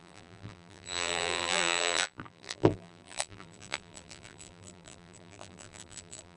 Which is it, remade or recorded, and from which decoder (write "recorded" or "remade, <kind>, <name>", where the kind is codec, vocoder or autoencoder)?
remade, vocoder, BigVGAN v2